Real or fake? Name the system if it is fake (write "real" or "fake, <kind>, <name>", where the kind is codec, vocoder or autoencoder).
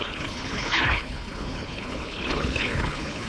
fake, codec, HILCodec